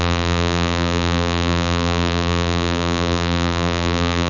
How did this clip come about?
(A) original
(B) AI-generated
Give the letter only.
B